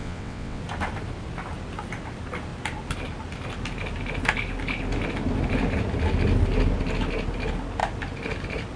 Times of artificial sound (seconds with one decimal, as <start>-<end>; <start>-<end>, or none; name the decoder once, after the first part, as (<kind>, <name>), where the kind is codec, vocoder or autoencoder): 0.0-0.6 (vocoder, WaveNeXt)